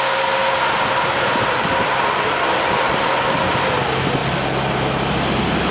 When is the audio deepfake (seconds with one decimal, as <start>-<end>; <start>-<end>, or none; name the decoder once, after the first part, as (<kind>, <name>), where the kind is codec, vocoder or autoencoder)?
0.4-3.8 (vocoder, BigVGAN v2)